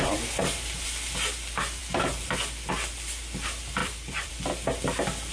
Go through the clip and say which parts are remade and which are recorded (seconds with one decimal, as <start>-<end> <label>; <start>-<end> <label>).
0.0-3.8 recorded; 3.8-4.3 remade; 4.3-5.3 recorded